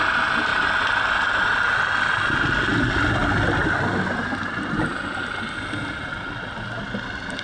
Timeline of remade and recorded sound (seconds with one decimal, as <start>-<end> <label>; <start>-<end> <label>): 0.0-7.4 recorded